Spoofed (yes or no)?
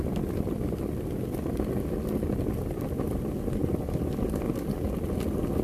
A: no